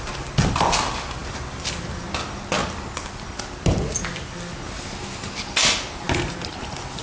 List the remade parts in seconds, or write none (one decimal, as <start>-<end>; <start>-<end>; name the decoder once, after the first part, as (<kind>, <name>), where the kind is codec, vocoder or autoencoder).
none